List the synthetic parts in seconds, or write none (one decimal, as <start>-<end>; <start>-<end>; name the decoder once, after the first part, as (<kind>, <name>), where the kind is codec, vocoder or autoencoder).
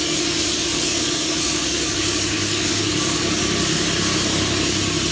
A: 0.0-3.4 (codec, DAC)